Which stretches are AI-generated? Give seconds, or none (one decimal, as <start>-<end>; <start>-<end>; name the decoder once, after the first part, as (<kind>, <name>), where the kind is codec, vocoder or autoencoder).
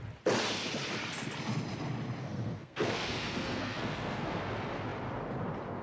2.2-4.4 (codec, SNAC)